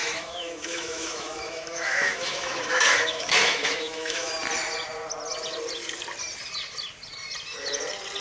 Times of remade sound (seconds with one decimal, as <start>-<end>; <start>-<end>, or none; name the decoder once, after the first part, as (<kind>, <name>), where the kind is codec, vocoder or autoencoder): 0.0-4.3 (autoencoder, DAC-VAE)